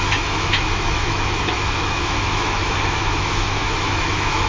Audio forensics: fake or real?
fake